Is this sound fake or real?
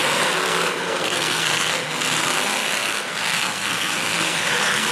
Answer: fake